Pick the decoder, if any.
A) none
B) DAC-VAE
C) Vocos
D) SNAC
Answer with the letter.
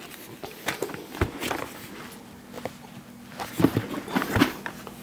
A